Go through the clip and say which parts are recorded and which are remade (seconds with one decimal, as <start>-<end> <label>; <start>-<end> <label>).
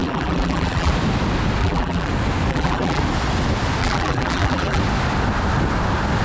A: 0.0-0.9 remade; 0.9-1.6 recorded; 1.6-2.1 remade; 2.1-2.5 recorded; 2.5-3.0 remade; 3.0-3.8 recorded; 3.8-4.8 remade; 4.8-6.2 recorded